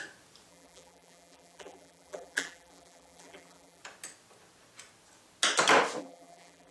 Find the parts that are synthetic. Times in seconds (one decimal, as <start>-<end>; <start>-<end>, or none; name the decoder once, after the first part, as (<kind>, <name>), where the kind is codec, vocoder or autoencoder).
0.5-3.8 (vocoder, BigVGAN v2); 6.0-6.7